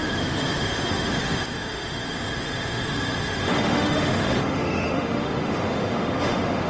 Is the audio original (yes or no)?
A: no